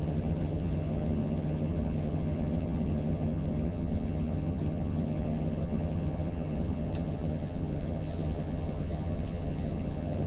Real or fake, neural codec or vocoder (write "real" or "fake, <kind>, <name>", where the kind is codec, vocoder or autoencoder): fake, vocoder, HiFi-GAN